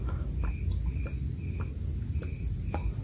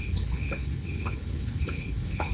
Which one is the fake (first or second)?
second